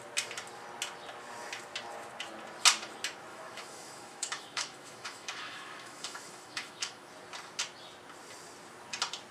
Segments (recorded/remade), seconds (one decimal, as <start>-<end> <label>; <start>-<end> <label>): 0.0-3.3 recorded; 3.3-7.1 remade; 7.1-9.3 recorded